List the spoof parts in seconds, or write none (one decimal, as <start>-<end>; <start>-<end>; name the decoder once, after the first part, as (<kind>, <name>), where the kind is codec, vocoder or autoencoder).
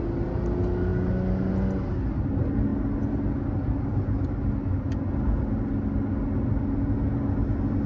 none